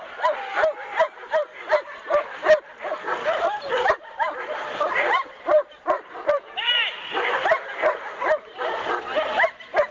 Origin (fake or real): fake